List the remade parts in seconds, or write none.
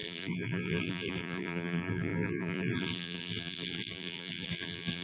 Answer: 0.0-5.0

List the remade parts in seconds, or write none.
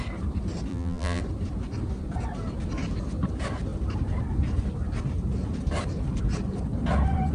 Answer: 0.7-1.2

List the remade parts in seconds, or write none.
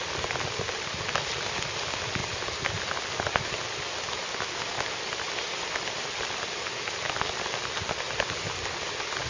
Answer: none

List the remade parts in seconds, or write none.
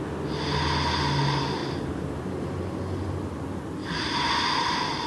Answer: 1.6-2.7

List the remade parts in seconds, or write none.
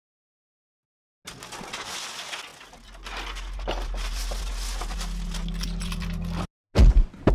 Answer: none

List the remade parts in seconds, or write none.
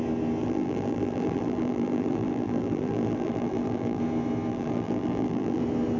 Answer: 0.4-4.0; 4.5-5.6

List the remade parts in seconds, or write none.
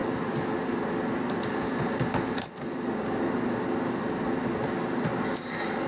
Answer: none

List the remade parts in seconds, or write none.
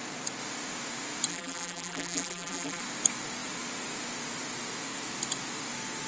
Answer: 1.3-2.8